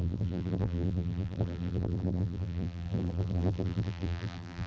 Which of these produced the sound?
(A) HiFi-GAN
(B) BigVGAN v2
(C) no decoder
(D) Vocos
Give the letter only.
B